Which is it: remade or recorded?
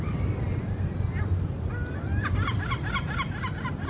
recorded